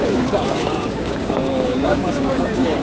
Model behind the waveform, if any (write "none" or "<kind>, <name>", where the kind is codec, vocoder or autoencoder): codec, DAC